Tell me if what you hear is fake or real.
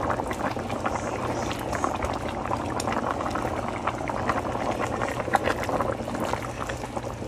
real